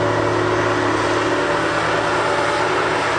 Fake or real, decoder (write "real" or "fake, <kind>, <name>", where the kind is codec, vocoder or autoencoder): real